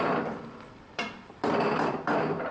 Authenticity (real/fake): fake